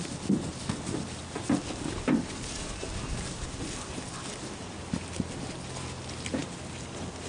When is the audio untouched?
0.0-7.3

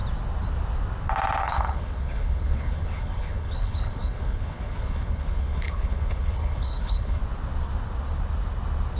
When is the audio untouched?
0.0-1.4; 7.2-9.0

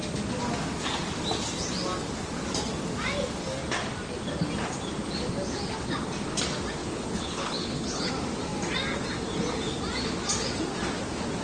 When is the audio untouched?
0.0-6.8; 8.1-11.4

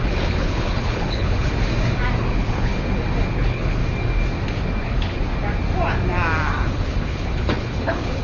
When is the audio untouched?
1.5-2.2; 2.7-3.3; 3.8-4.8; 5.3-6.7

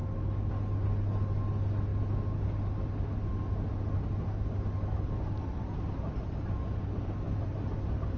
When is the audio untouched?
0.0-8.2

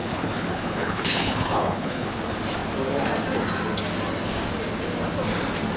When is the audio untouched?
2.2-5.8

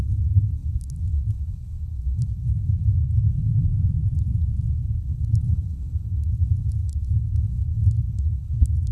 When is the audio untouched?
3.7-4.7

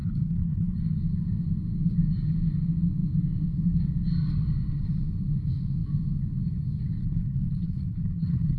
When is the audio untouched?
0.8-7.0